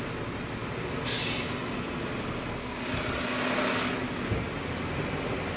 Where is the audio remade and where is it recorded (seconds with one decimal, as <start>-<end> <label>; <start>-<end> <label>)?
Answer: 0.0-5.6 recorded